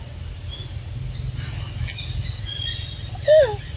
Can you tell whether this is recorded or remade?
recorded